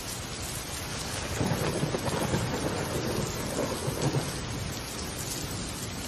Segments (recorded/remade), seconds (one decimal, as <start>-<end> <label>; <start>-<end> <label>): 0.0-0.9 recorded; 0.9-1.4 remade; 1.4-6.1 recorded